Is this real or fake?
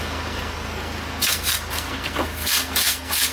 fake